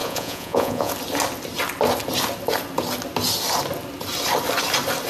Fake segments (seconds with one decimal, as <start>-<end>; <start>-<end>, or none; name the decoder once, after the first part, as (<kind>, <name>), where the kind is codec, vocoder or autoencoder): 0.0-0.9 (vocoder, Vocos)